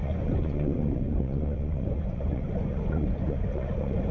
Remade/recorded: remade